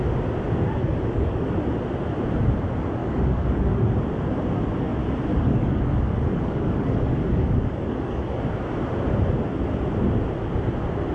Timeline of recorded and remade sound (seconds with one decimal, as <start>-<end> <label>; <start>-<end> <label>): 0.0-0.8 recorded; 0.8-1.5 remade; 1.5-3.0 recorded; 3.0-3.9 remade; 3.9-5.3 recorded; 5.3-8.4 remade; 8.4-11.1 recorded